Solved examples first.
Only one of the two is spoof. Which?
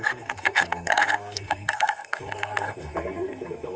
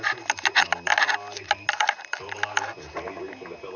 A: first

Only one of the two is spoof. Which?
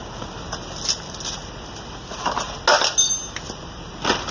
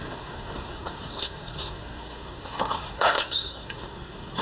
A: second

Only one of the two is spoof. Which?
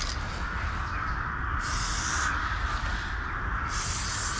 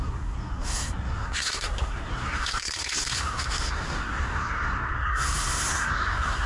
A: second